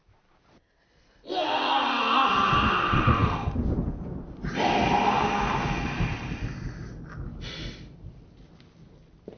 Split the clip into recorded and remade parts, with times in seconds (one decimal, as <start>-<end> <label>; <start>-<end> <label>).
0.0-9.4 recorded